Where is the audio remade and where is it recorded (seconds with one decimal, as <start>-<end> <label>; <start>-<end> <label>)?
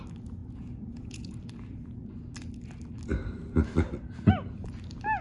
0.0-0.4 recorded; 0.4-1.4 remade; 1.4-5.2 recorded